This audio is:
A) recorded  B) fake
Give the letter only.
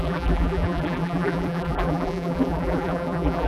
B